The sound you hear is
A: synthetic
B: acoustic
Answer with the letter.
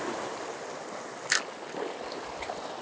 B